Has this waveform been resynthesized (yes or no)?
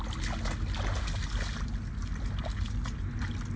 no